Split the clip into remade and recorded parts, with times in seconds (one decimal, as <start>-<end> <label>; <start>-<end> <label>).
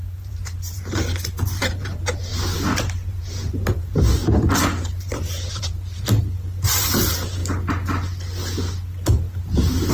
0.0-2.3 remade; 2.3-3.1 recorded; 3.1-4.2 remade; 4.2-4.8 recorded; 4.8-7.4 remade; 7.4-9.9 recorded